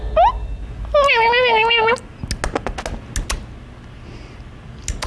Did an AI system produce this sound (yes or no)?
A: no